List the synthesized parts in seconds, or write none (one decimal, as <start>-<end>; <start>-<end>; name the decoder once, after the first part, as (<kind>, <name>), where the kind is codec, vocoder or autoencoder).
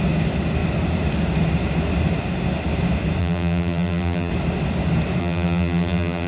3.2-4.3 (vocoder, BigVGAN v2); 5.2-6.3